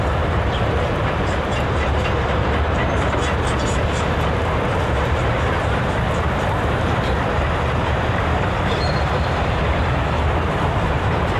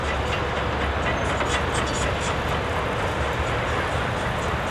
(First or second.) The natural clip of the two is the second